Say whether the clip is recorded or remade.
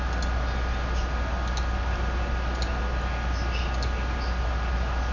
recorded